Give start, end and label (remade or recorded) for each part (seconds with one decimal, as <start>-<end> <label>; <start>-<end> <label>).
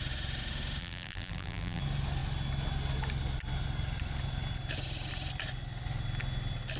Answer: 0.0-0.8 recorded; 0.8-1.8 remade; 1.8-6.8 recorded